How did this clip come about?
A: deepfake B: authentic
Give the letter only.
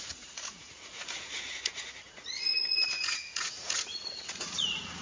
A